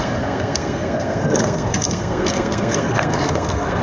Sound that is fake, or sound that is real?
fake